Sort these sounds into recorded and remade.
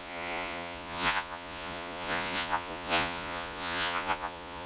remade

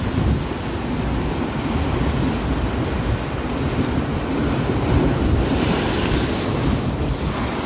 recorded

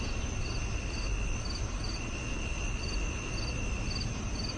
recorded